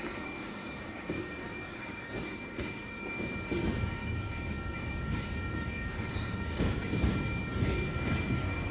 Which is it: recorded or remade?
remade